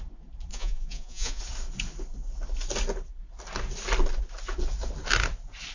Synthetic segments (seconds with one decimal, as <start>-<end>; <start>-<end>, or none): 0.5-1.4